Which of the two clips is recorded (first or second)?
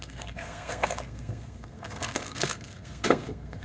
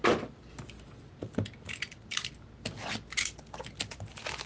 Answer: second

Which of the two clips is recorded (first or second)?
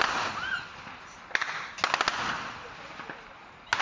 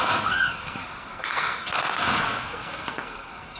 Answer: first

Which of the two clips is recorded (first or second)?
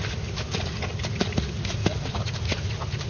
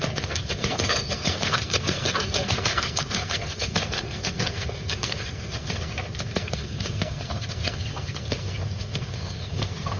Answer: first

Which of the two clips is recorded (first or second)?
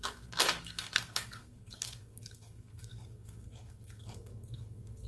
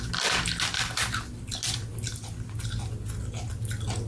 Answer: second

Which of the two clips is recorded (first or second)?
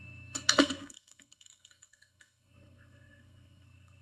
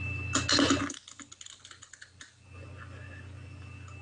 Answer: second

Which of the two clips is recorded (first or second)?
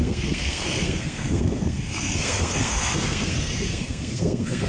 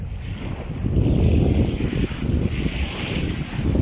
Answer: second